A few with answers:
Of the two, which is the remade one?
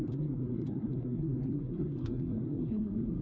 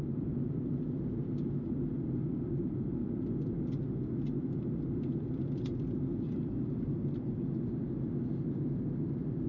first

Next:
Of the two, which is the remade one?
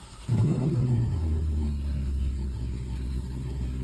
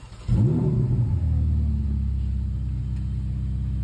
first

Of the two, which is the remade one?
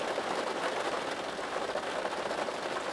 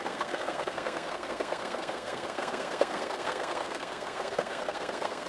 second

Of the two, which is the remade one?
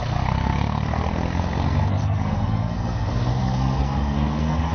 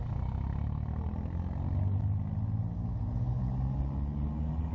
first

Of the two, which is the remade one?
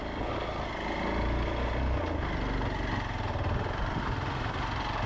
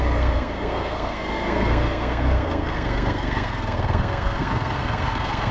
second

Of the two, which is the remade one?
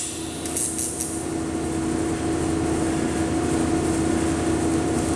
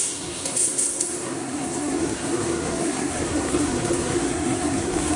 second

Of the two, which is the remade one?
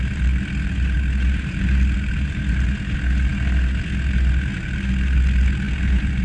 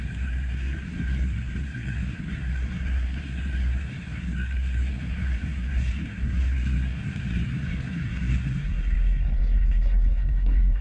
second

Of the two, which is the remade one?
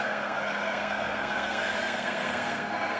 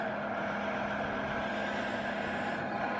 first